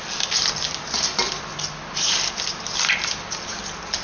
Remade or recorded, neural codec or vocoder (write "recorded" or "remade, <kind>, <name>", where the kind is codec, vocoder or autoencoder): recorded